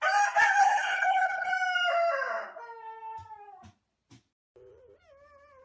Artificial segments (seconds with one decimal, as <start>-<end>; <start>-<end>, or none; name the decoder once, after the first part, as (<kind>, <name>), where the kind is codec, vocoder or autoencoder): 0.6-1.5 (codec, HILCodec)

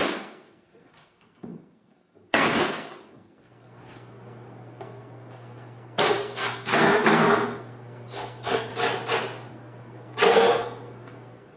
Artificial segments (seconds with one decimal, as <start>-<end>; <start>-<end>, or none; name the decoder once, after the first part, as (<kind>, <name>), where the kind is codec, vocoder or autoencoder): 0.0-8.7 (codec, SNAC); 9.5-11.6

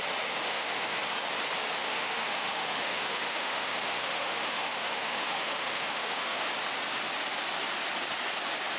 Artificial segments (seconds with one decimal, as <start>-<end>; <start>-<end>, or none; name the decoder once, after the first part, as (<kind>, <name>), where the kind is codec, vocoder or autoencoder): 0.5-1.0 (autoencoder, DAC-VAE); 1.8-6.5

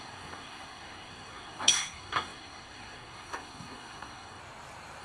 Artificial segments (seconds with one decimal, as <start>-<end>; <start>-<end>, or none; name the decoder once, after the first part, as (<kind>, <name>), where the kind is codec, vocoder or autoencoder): 0.0-4.4 (codec, SNAC)

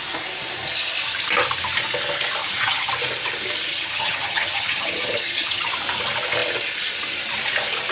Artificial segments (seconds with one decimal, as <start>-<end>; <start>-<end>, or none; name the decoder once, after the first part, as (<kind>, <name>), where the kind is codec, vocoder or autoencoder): 2.4-2.9 (vocoder, HiFi-GAN); 3.7-5.7

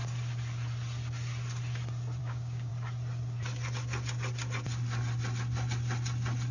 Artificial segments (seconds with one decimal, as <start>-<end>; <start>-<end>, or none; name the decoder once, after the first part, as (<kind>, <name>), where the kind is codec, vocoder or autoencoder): 2.2-2.7 (codec, DAC)

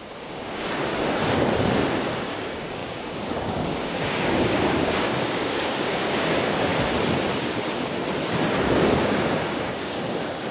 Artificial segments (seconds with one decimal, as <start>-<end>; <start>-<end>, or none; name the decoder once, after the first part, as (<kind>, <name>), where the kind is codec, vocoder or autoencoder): 0.0-0.9 (codec, DAC); 2.1-6.7; 8.9-10.5

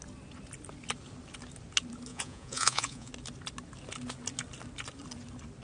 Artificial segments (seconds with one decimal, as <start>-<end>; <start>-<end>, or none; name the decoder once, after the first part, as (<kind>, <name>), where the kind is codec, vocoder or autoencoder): 2.1-3.1 (vocoder, Vocos)